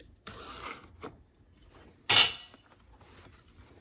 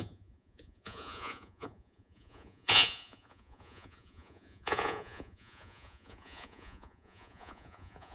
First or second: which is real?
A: first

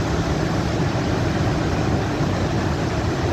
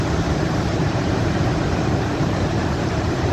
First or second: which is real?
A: first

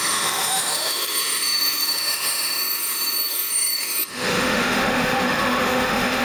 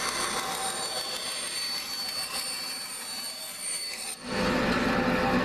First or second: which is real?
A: second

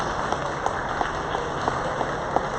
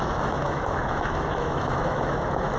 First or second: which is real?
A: first